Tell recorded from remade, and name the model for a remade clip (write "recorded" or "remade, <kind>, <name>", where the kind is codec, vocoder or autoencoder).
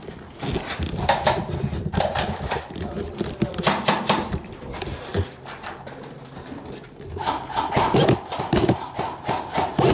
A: remade, vocoder, BigVGAN v2